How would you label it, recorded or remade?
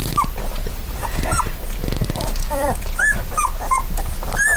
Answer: remade